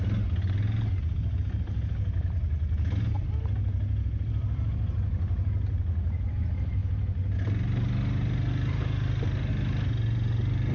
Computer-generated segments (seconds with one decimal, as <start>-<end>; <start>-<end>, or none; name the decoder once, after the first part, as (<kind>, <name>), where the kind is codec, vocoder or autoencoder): none